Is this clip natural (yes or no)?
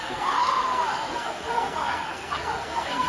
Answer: no